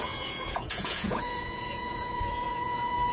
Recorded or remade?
remade